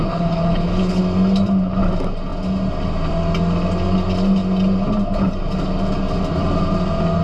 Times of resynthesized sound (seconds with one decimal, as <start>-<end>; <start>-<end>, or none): 0.0-1.0